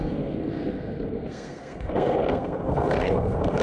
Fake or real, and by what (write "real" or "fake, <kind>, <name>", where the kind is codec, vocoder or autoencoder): fake, codec, SNAC